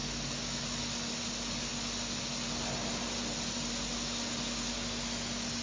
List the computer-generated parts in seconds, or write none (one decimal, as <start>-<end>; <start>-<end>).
none